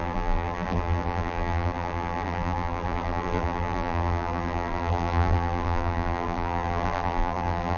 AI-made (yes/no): yes